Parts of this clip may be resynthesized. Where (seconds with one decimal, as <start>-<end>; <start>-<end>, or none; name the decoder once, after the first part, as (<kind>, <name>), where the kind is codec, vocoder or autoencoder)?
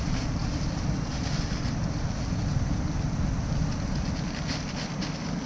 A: none